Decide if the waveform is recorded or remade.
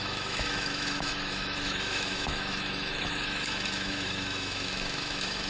remade